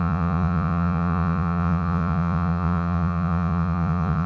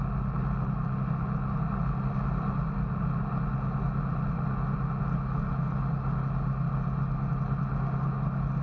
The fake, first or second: first